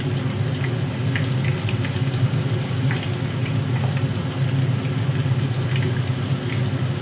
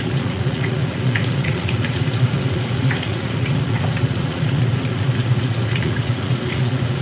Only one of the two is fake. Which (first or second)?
second